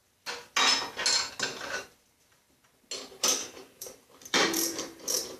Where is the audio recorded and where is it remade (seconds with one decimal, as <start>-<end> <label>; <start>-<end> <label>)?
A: 0.0-3.4 recorded; 3.4-5.4 remade